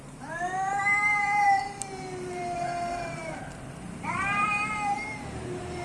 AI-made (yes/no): yes